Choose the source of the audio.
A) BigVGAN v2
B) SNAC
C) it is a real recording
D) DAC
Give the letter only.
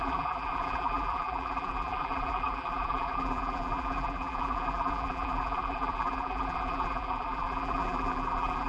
A